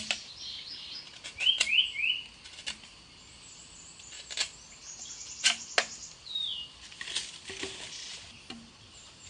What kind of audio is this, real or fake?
real